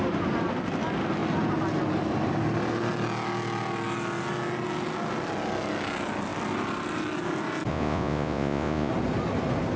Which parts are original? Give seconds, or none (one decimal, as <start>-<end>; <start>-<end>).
0.0-7.7; 8.9-9.8

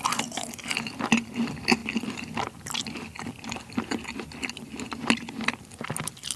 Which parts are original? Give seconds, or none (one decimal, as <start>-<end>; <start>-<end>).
0.0-6.4